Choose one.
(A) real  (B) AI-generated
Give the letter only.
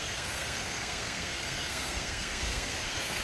B